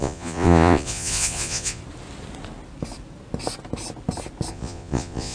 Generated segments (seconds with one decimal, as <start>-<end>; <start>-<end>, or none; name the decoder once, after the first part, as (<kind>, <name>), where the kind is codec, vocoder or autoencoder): 0.0-1.8 (vocoder, Vocos); 4.5-5.3